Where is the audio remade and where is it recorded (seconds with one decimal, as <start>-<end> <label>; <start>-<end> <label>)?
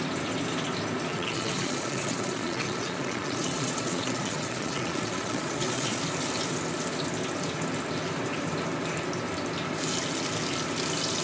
0.0-1.1 recorded; 1.1-6.0 remade; 6.0-11.2 recorded